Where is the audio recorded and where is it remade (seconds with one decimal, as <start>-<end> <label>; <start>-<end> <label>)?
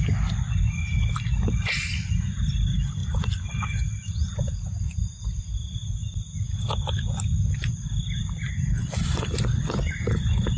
0.0-10.6 recorded